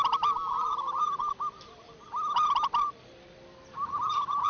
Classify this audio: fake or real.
fake